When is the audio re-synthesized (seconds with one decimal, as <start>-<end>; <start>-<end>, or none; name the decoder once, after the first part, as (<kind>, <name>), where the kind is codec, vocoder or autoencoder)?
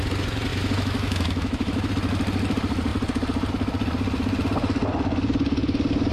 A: 0.5-1.9 (autoencoder, DAC-VAE)